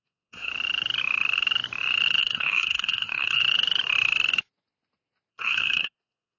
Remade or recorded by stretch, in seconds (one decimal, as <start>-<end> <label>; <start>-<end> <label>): 0.0-0.5 remade; 0.5-2.2 recorded; 2.2-3.4 remade; 3.4-5.3 recorded; 5.3-6.4 remade